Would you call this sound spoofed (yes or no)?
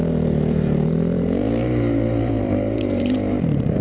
yes